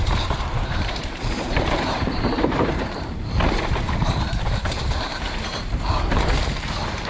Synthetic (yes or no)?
yes